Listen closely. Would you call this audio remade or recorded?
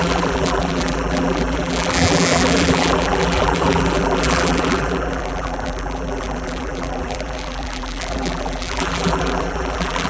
remade